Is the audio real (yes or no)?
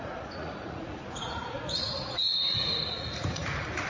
no